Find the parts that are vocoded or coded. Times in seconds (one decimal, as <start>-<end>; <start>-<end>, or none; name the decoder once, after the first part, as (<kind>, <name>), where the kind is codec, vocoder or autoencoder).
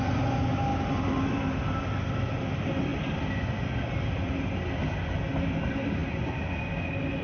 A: none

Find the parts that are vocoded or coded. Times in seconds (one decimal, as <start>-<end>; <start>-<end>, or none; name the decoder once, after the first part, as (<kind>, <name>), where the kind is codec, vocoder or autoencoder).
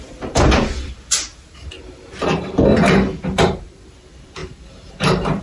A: 1.3-3.9 (vocoder, BigVGAN v2); 4.4-5.4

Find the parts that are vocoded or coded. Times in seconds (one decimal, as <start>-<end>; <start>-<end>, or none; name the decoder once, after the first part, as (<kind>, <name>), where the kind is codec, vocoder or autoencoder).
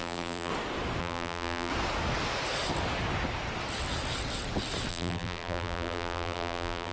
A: 0.0-0.5 (vocoder, BigVGAN v2); 1.0-1.7; 4.9-6.9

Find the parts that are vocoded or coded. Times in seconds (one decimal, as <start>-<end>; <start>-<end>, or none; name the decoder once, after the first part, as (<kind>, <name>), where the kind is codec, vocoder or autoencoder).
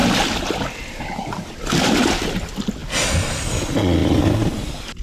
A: none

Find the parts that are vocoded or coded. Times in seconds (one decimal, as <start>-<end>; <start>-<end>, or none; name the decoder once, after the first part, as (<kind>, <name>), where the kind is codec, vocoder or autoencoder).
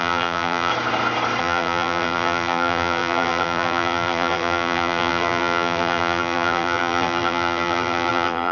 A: 0.0-0.7 (vocoder, BigVGAN v2); 1.4-8.5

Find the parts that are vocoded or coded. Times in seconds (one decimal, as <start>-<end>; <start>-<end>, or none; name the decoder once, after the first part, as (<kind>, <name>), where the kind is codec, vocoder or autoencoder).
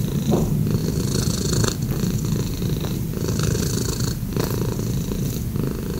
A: none